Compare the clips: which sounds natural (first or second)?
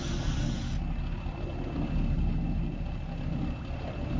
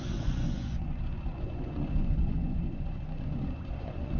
first